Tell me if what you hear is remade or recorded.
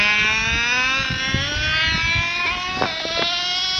recorded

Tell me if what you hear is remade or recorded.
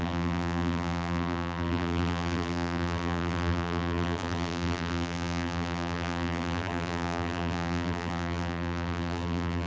remade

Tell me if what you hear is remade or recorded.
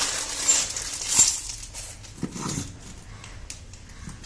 recorded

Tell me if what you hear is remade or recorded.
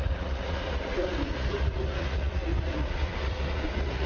remade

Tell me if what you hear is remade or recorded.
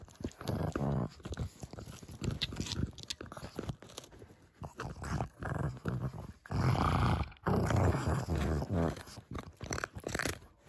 recorded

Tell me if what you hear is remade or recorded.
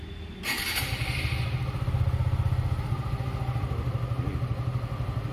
recorded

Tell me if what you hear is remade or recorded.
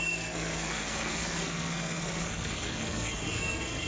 remade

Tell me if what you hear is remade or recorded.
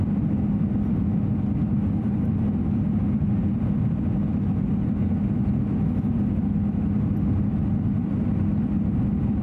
recorded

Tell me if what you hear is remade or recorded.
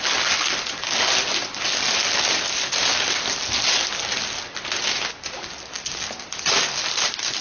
recorded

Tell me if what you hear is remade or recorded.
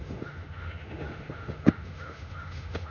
remade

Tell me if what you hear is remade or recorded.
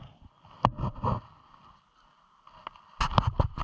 recorded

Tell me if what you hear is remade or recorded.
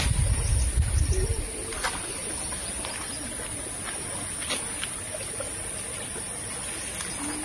recorded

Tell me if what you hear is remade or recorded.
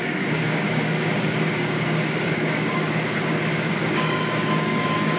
remade